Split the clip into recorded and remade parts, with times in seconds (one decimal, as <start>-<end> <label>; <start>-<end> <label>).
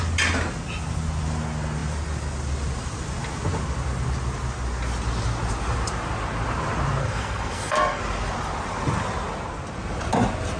0.0-7.0 recorded; 7.0-8.0 remade; 8.0-10.6 recorded